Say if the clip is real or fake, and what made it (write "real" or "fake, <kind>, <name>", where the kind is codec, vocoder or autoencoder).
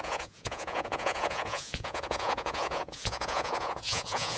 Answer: fake, vocoder, Vocos